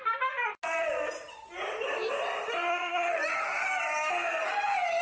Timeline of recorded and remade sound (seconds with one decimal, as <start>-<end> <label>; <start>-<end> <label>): 0.0-2.7 recorded; 2.7-3.2 remade; 3.2-5.0 recorded